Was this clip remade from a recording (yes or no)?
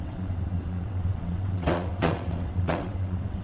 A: yes